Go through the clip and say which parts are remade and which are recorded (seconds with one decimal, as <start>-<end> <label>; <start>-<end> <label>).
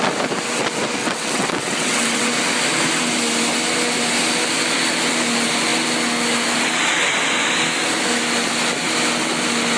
0.0-1.0 recorded; 1.0-2.3 remade; 2.3-9.8 recorded